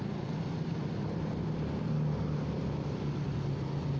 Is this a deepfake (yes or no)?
no